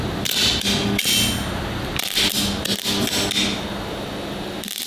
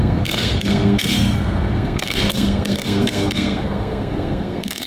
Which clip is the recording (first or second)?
first